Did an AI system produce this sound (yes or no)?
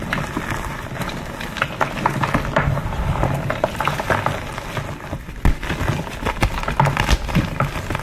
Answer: no